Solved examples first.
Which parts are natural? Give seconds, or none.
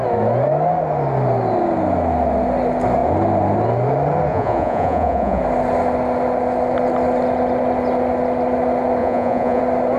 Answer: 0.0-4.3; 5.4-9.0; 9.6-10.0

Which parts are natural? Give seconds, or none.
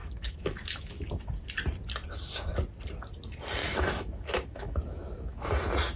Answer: 1.3-3.6; 5.5-6.0